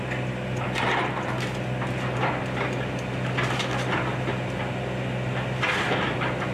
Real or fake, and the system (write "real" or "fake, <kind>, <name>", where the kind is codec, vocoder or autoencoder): real